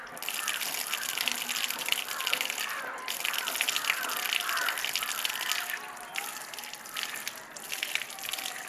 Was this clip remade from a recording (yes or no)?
no